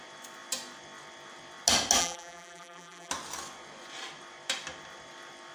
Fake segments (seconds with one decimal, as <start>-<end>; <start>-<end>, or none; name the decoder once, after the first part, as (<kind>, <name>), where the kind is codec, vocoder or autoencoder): 2.0-3.1 (vocoder, BigVGAN v2)